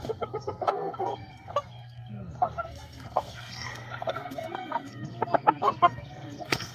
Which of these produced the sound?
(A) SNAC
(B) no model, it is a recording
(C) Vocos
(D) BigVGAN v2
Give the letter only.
A